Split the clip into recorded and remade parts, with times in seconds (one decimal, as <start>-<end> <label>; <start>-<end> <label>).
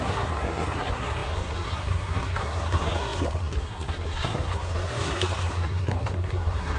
0.0-6.8 remade